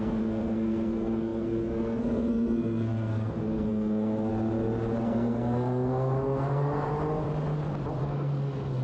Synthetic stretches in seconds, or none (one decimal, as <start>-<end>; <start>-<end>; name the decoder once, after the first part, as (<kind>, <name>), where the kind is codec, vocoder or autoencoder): 0.0-4.3 (codec, SNAC); 5.0-6.9; 8.0-8.8